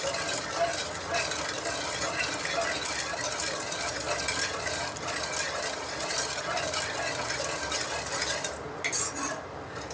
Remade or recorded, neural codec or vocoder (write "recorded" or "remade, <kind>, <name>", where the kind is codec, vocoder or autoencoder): recorded